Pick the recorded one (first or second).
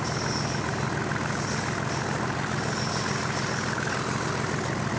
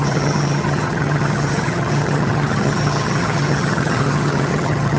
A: first